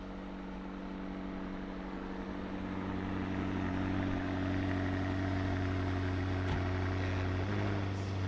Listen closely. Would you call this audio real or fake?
real